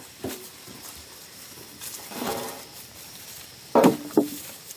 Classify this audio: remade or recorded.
remade